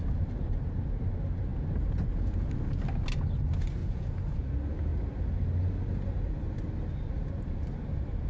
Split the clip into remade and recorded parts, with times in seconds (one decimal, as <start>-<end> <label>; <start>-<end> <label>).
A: 0.0-3.8 recorded; 3.8-4.5 remade; 4.5-8.3 recorded